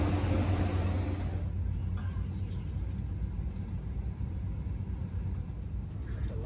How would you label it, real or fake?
real